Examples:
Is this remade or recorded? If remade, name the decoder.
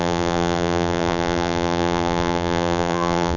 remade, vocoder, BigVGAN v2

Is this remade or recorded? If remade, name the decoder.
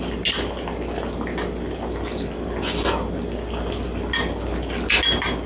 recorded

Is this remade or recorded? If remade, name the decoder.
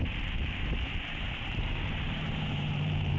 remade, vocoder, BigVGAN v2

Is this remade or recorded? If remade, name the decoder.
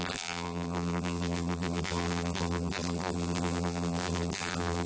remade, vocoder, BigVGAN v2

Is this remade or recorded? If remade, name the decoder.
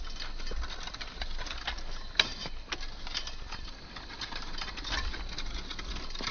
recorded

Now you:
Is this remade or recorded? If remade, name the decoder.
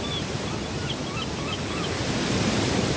remade, vocoder, BigVGAN v2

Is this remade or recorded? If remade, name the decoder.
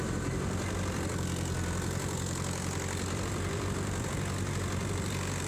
remade, vocoder, BigVGAN v2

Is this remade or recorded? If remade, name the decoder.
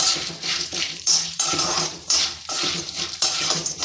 remade, vocoder, BigVGAN v2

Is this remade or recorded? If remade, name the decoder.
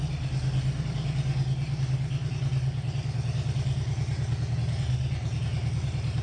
recorded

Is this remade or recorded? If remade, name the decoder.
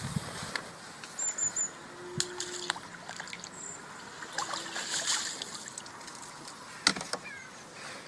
recorded